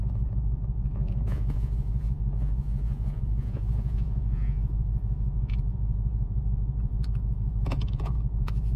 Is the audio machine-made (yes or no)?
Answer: yes